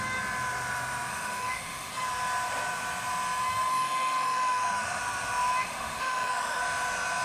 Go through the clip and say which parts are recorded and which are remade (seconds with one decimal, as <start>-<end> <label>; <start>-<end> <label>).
0.0-1.1 recorded; 1.1-1.9 remade; 1.9-3.7 recorded; 3.7-5.0 remade; 5.0-5.6 recorded; 5.6-6.6 remade; 6.6-7.2 recorded